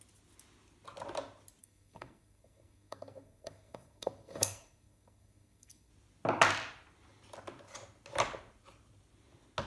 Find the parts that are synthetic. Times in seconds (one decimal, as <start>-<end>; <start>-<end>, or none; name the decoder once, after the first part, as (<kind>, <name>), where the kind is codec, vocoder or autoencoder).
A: 1.6-5.9 (codec, SNAC)